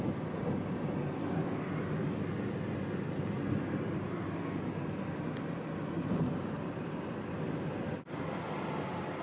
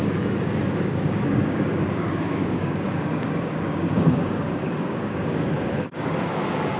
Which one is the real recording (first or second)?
first